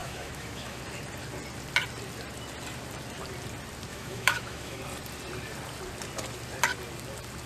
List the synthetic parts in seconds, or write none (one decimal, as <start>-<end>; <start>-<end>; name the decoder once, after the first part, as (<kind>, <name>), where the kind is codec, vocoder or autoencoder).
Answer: 0.0-0.8 (autoencoder, DAC-VAE); 3.9-4.8